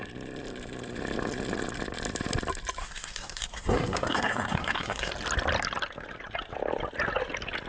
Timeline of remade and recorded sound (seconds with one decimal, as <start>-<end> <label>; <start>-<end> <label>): 0.0-2.8 recorded; 2.8-5.1 remade; 5.1-7.7 recorded